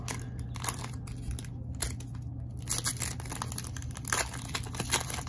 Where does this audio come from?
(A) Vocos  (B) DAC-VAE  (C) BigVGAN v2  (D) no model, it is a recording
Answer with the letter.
D